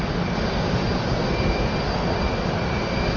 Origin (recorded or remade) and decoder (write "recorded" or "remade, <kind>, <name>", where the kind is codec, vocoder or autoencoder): recorded